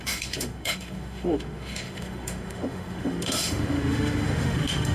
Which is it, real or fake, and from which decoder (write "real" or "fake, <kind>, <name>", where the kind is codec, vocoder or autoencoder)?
fake, autoencoder, DAC-VAE